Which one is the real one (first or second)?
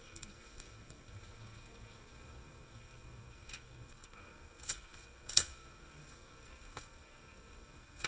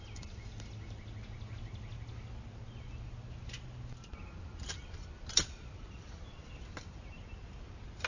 second